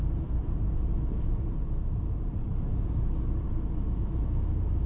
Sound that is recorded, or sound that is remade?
remade